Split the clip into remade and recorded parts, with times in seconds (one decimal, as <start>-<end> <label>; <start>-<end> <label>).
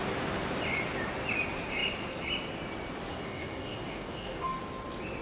0.0-3.1 recorded; 3.1-4.6 remade; 4.6-5.2 recorded